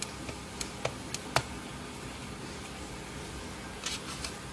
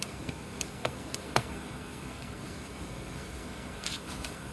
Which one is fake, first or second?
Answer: second